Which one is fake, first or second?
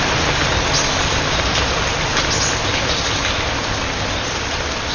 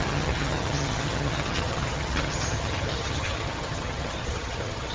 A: second